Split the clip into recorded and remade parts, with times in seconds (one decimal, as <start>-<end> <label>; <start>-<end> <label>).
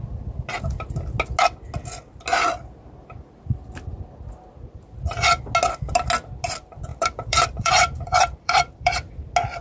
0.0-6.9 recorded; 6.9-9.1 remade; 9.1-9.6 recorded